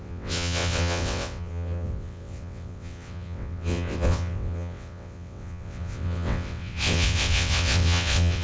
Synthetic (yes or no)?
yes